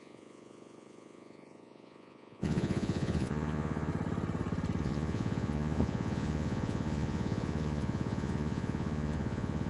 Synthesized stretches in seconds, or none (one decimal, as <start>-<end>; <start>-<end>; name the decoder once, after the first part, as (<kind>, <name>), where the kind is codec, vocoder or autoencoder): 0.0-3.9 (vocoder, Vocos); 4.8-9.7